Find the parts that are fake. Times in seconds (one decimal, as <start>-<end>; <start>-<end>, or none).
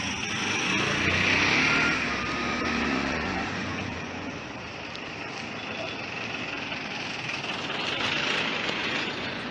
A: 2.5-4.5; 8.5-9.5